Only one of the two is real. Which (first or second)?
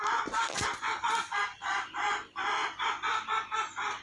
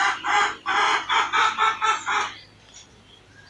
second